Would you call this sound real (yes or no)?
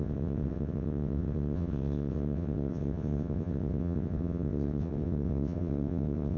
no